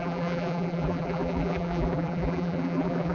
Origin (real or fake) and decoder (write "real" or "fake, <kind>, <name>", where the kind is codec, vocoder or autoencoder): fake, vocoder, BigVGAN v2